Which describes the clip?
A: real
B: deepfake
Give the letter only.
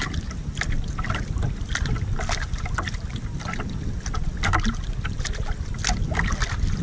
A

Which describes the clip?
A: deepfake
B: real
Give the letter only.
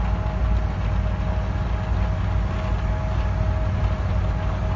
B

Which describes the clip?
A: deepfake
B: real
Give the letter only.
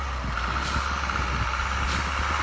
B